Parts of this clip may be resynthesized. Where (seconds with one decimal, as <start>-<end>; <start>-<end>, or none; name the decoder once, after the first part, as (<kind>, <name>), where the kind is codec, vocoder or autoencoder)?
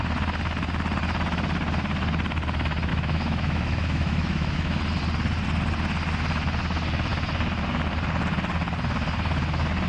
2.9-4.8 (autoencoder, DAC-VAE)